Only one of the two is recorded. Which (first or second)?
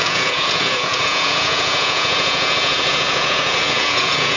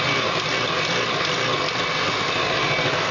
second